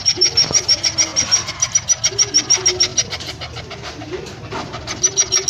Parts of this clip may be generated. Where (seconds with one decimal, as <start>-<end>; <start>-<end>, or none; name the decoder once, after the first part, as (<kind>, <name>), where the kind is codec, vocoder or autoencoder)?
none